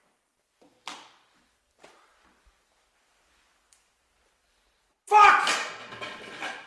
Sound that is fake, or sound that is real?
fake